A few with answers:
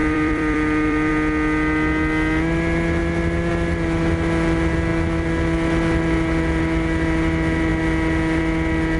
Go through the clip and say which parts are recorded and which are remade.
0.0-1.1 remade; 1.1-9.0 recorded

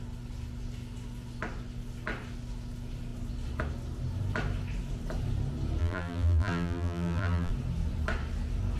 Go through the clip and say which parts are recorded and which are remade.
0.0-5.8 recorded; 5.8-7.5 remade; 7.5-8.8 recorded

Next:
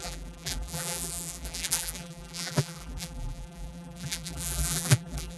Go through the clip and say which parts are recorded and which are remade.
0.0-5.4 remade

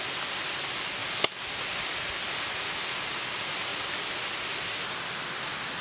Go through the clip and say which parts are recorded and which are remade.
0.0-5.8 recorded